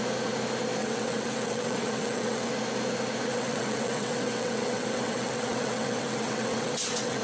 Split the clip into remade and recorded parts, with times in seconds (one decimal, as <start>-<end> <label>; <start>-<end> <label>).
0.0-0.8 recorded; 0.8-2.5 remade; 2.5-3.3 recorded; 3.3-7.2 remade